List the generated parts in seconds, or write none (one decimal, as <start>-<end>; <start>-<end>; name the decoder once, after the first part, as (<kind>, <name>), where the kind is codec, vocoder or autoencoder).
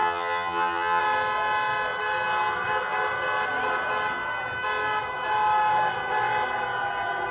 0.0-1.0 (vocoder, HiFi-GAN)